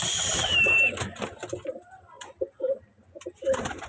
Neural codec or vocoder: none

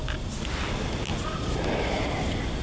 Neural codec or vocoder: none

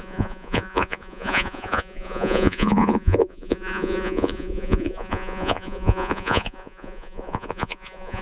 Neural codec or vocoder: vocoder, Vocos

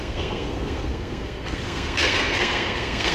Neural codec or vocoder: codec, SNAC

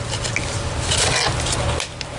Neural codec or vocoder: none